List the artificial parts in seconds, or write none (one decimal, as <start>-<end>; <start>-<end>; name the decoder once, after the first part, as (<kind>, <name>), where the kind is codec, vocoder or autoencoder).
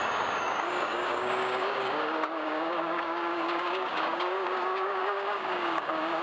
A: 0.0-6.2 (codec, DAC)